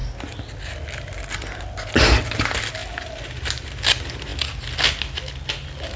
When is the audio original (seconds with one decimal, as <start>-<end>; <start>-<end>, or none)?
0.0-6.0